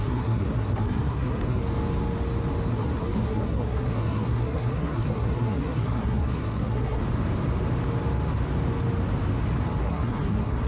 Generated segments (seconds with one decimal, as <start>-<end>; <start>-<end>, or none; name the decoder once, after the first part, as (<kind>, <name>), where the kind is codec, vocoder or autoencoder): 0.0-1.6 (codec, SNAC); 2.7-7.0; 9.8-10.7